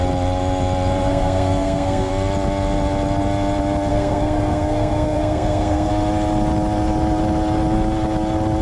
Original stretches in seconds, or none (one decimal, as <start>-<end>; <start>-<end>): 0.0-1.1; 2.1-3.9; 5.9-8.6